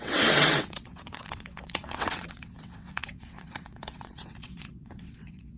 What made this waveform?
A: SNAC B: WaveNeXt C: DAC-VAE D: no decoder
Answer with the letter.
B